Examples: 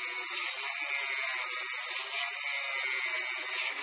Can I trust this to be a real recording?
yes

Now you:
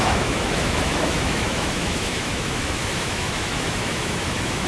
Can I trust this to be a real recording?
no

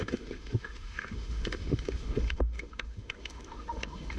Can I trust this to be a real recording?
no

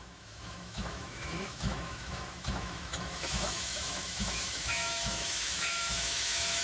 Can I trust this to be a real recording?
no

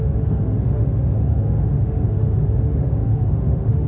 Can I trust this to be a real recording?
no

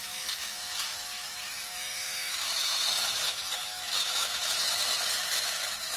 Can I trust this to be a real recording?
no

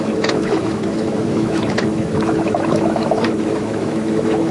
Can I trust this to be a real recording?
no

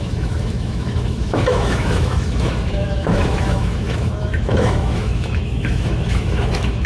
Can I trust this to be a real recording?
no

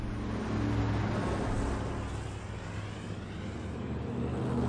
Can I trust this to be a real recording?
yes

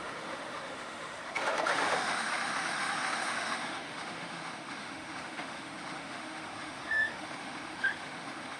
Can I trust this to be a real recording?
no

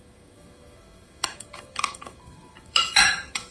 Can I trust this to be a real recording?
no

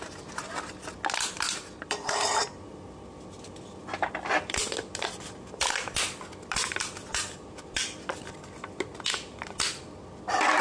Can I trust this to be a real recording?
yes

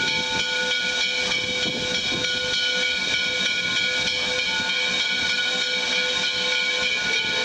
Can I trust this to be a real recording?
yes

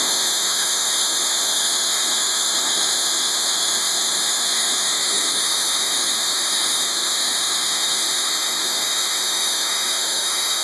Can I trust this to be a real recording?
no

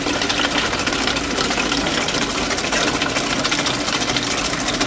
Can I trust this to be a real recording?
yes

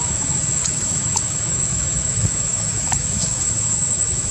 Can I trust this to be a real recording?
no